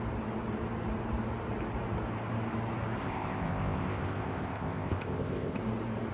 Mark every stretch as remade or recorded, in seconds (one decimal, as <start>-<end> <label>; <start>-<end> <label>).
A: 0.0-3.0 recorded; 3.0-5.6 remade; 5.6-6.1 recorded